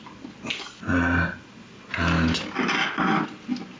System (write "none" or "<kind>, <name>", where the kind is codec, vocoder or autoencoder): none